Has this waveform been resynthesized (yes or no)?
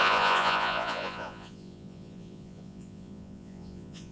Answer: yes